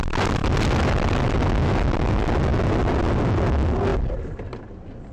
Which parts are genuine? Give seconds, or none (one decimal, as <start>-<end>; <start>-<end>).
0.0-5.1